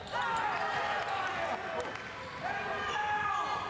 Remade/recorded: recorded